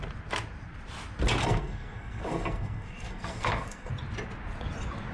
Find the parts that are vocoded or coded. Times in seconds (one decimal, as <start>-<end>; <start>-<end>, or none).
1.4-3.9